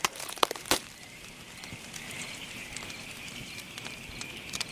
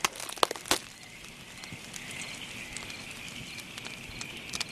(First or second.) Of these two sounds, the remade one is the first